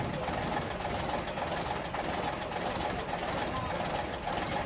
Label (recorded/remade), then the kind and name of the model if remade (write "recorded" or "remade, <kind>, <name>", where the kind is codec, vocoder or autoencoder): recorded